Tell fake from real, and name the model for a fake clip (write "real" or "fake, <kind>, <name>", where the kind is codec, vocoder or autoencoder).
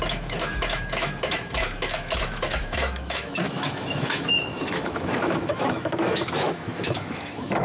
fake, autoencoder, DAC-VAE